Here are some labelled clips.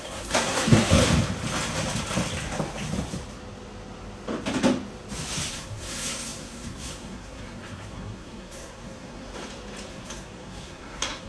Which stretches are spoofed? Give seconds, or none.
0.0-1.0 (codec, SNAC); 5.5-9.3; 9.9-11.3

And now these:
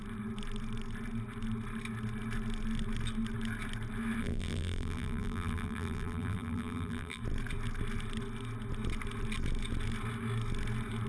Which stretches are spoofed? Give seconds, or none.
4.2-7.2 (vocoder, BigVGAN v2)

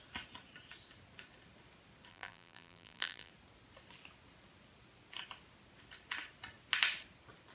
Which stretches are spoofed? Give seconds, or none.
2.1-3.3 (vocoder, BigVGAN v2)

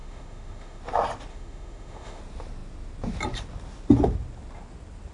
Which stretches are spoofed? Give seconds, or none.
0.0-0.8 (autoencoder, DAC-VAE); 1.3-2.2